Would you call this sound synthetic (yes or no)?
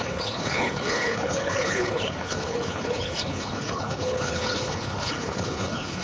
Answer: yes